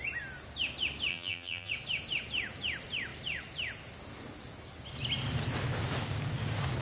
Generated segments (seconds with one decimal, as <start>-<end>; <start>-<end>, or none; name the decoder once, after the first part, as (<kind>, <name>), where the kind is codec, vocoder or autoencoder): 1.1-1.7 (vocoder, BigVGAN v2)